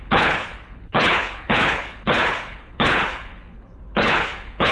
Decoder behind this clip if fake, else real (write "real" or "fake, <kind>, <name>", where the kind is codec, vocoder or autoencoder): fake, codec, HILCodec